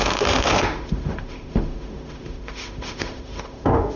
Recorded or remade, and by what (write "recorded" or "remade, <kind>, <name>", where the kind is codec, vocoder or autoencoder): remade, autoencoder, DAC-VAE